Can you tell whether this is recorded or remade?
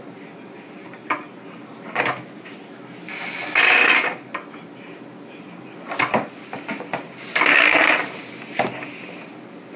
recorded